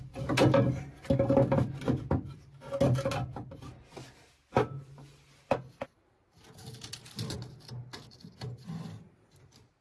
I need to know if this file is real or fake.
real